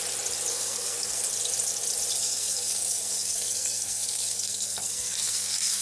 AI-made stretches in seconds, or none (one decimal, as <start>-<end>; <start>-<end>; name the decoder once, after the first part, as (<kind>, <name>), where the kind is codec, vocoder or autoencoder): 0.5-1.2 (codec, SNAC); 2.2-5.8